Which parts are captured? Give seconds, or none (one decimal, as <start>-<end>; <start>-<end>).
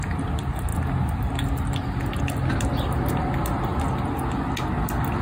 0.0-5.2